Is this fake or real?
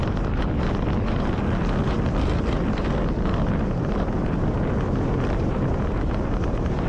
real